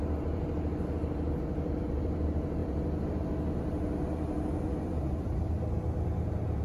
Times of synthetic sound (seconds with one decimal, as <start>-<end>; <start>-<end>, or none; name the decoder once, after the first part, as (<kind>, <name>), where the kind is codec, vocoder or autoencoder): none